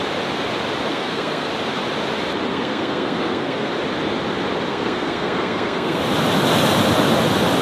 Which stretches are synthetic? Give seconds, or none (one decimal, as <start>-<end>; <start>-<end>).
0.9-1.5; 2.5-3.7; 4.7-6.0